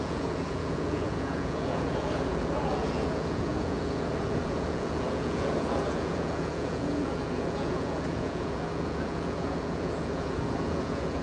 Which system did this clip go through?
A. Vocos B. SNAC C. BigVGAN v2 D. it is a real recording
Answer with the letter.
A